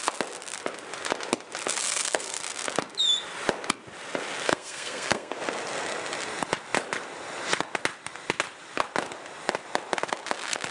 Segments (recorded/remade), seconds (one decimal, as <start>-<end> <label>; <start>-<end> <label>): 0.0-1.8 recorded; 1.8-2.4 remade; 2.4-4.5 recorded; 4.5-5.3 remade; 5.3-10.7 recorded